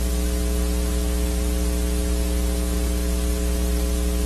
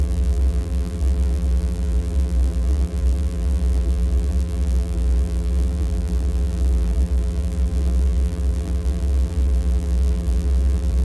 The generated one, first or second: second